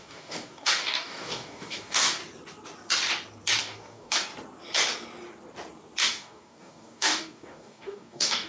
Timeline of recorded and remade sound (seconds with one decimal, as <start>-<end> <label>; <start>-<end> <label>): 0.0-2.2 remade; 2.2-3.6 recorded; 3.6-4.3 remade; 4.3-6.0 recorded; 6.0-8.5 remade